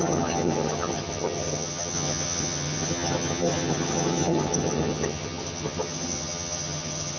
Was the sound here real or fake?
fake